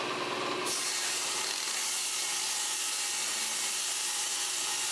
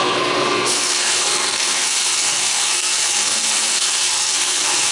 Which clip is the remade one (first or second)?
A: second